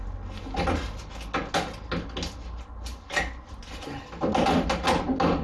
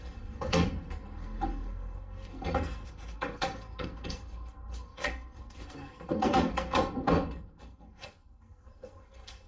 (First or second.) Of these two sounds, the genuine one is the first